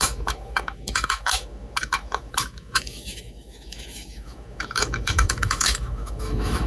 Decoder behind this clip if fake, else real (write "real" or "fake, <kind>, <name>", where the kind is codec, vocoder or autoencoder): fake, autoencoder, DAC-VAE